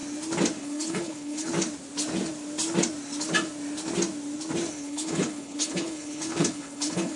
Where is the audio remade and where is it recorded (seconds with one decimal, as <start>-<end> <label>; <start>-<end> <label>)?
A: 0.0-0.6 recorded; 0.6-1.5 remade; 1.5-4.7 recorded; 4.7-7.2 remade